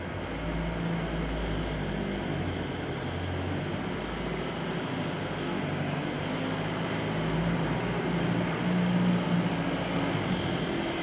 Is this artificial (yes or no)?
no